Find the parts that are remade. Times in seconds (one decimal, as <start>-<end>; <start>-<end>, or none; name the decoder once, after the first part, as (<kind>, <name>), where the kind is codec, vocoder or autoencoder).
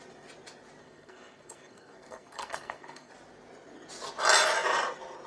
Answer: 0.8-3.1 (codec, SNAC)